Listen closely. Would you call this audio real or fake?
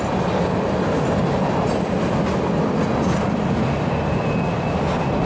real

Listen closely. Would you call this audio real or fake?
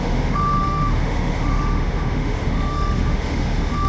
fake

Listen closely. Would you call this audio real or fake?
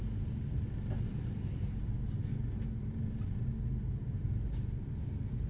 real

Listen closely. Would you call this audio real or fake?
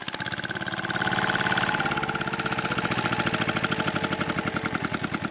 real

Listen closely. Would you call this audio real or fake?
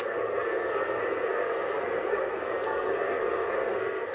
fake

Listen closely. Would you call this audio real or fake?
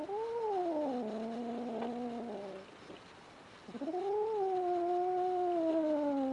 real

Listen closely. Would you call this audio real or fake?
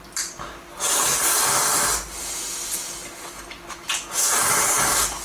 real